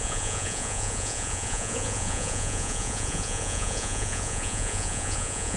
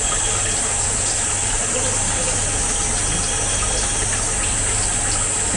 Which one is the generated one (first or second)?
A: first